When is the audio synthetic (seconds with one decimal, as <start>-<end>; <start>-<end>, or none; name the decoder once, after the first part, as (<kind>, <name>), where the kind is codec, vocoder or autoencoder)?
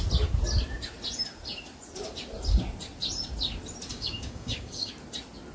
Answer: 3.9-4.9 (codec, DAC)